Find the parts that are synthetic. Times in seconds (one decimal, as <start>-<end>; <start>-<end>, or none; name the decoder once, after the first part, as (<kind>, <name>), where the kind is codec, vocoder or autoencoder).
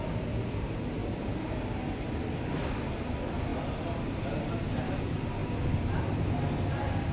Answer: none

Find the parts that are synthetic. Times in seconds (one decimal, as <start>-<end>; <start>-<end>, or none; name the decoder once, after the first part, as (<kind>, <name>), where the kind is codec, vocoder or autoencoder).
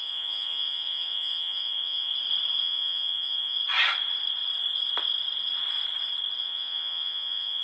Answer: 0.0-2.1 (vocoder, Vocos); 2.6-3.6; 6.4-7.6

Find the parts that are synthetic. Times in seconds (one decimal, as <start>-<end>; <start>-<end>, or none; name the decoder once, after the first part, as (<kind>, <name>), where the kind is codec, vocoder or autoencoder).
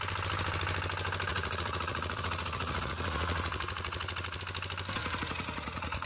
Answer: 1.3-4.4 (vocoder, Vocos); 5.0-6.1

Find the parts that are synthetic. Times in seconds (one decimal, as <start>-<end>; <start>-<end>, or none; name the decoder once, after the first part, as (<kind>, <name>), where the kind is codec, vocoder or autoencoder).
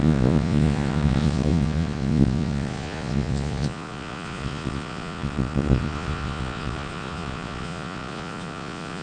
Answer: 0.0-9.0 (vocoder, Vocos)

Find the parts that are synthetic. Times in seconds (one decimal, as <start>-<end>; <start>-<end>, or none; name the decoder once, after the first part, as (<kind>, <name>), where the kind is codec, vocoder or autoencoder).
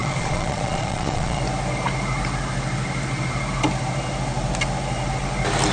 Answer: 0.0-1.4 (vocoder, Vocos)